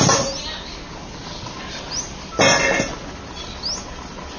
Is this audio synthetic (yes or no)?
no